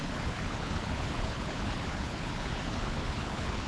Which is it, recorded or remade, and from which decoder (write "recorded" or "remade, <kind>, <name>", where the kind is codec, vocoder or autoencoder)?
remade, codec, HILCodec